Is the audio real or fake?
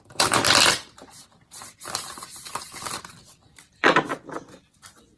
real